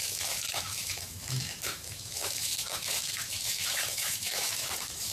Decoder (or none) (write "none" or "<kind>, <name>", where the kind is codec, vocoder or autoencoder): autoencoder, DAC-VAE